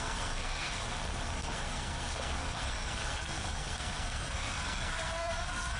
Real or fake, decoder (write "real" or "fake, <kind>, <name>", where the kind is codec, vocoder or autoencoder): fake, codec, SNAC